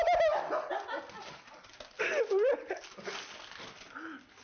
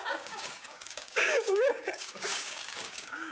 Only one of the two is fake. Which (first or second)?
second